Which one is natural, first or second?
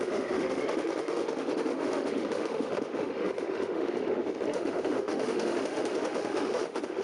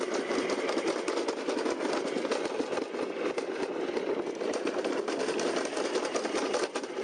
second